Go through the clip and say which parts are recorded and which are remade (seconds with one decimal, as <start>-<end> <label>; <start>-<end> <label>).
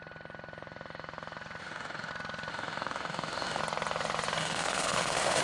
0.0-1.6 recorded; 1.6-2.1 remade; 2.1-2.5 recorded; 2.5-3.6 remade; 3.6-4.4 recorded; 4.4-5.4 remade